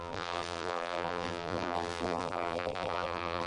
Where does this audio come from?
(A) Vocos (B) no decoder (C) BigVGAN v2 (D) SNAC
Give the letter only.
C